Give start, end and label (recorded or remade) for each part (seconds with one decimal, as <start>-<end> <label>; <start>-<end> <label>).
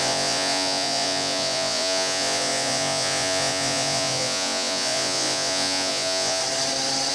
0.0-6.4 remade; 6.4-7.1 recorded